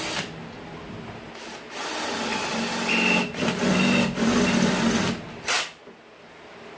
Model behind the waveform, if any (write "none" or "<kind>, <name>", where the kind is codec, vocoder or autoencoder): none